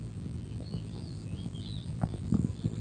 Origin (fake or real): fake